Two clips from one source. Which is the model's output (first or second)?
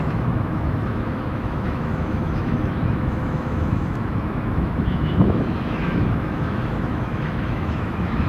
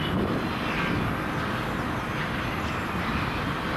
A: first